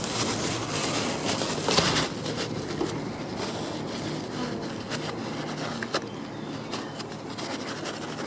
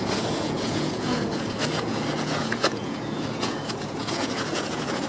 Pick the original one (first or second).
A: first